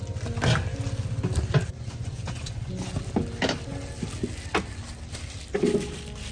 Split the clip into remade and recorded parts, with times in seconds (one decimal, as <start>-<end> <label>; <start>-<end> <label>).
0.0-1.7 recorded; 1.7-2.7 remade; 2.7-6.3 recorded